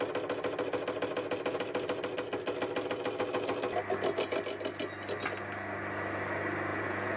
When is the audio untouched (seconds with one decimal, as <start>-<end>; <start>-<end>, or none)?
0.0-6.7